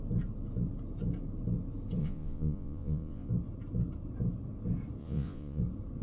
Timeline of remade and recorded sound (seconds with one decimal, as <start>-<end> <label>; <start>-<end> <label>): 0.0-2.0 recorded; 2.0-3.3 remade; 3.3-5.0 recorded; 5.0-5.6 remade; 5.6-6.0 recorded